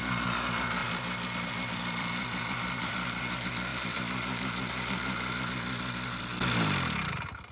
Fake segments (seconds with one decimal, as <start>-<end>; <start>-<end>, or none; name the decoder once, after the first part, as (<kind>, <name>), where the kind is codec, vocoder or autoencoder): 0.8-3.2 (vocoder, BigVGAN v2); 3.7-6.2